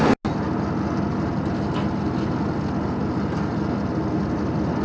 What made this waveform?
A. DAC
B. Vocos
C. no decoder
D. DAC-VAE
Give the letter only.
C